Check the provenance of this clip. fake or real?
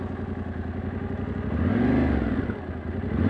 real